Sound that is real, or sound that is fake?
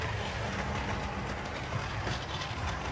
real